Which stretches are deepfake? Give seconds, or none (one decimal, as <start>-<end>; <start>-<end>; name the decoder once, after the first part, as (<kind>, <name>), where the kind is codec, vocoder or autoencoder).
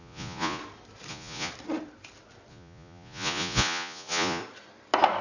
0.0-0.6 (vocoder, Vocos); 1.1-1.5; 2.5-4.4